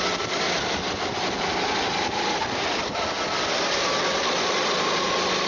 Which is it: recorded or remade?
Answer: recorded